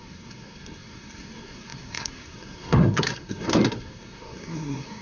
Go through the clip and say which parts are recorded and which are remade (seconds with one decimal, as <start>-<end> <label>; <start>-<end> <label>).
0.0-5.0 remade

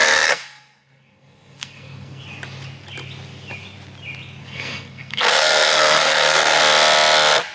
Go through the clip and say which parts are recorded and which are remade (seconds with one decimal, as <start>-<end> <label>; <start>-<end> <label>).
0.0-2.2 remade; 2.2-4.4 recorded; 4.4-6.6 remade; 6.6-7.5 recorded

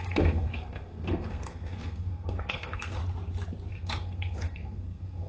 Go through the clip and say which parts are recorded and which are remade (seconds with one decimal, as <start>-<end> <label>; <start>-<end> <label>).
0.0-3.0 remade; 3.0-3.7 recorded; 3.7-5.3 remade

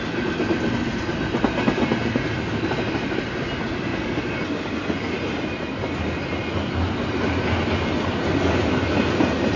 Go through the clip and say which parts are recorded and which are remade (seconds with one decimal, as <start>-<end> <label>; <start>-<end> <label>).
0.0-9.6 recorded

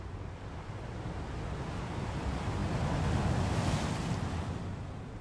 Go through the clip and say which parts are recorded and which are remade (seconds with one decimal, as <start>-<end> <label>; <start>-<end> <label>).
0.0-5.2 recorded